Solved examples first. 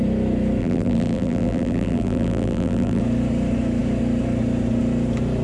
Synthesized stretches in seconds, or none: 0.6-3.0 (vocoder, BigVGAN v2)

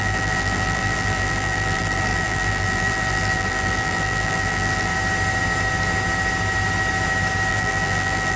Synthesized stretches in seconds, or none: 0.0-4.9 (vocoder, BigVGAN v2); 7.5-8.4

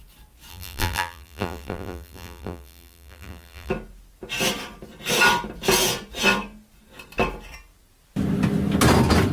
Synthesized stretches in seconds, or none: 0.5-3.7 (vocoder, BigVGAN v2)

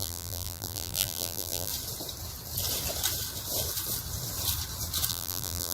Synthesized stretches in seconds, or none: 0.0-1.7 (vocoder, BigVGAN v2); 5.1-5.7

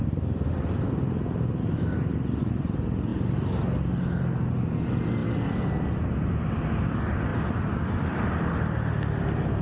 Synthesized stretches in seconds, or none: 7.3-8.5 (vocoder, BigVGAN v2)